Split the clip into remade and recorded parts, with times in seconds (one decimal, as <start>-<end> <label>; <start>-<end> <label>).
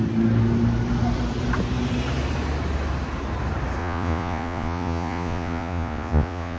0.0-3.8 recorded; 3.8-6.6 remade